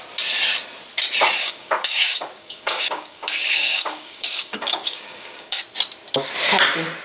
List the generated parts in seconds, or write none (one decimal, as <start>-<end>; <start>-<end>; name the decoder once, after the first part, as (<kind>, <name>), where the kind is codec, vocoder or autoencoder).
1.4-5.6 (codec, DAC)